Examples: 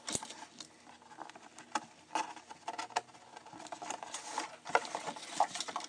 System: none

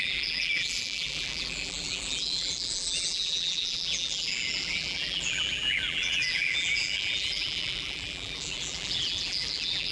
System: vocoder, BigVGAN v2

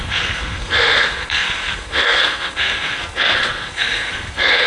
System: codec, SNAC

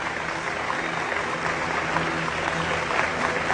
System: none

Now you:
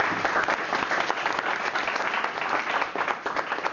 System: none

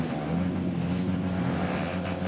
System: none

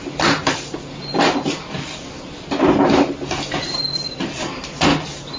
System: none